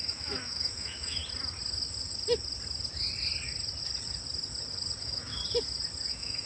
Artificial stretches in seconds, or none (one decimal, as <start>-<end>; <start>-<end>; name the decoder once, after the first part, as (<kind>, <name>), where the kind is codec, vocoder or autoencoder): 0.0-1.2 (autoencoder, DAC-VAE); 5.0-5.4; 6.1-6.5